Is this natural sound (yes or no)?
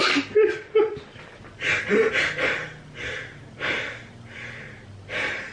yes